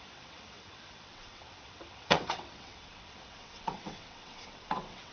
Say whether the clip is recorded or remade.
remade